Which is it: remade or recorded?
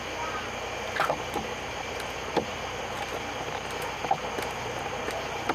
recorded